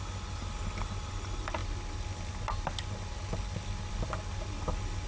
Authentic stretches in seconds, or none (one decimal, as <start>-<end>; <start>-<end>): 0.0-5.1